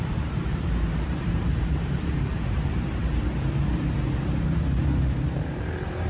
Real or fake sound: fake